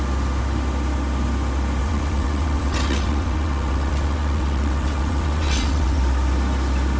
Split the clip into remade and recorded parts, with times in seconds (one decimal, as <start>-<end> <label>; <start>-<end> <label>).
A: 0.0-1.8 recorded; 1.8-6.0 remade; 6.0-7.0 recorded